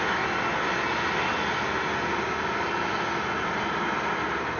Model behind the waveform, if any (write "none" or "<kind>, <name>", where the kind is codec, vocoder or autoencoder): none